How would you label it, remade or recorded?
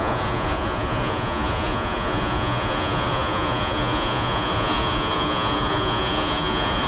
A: remade